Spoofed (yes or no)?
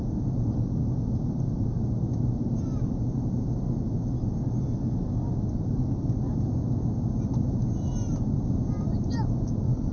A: no